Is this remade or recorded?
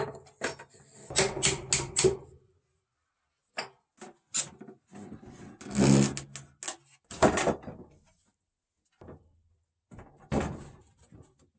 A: recorded